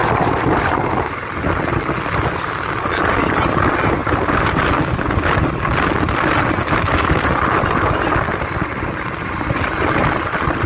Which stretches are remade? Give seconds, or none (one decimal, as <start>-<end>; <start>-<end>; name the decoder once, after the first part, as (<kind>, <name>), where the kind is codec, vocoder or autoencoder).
0.0-1.2 (vocoder, BigVGAN v2); 4.0-4.6